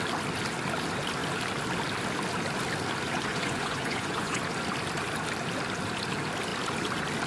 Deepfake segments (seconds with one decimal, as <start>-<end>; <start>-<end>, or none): 3.3-4.4